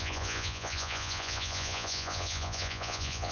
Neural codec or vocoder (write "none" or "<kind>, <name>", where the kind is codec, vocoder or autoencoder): vocoder, Vocos